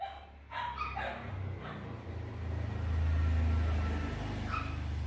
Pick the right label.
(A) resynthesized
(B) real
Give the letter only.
B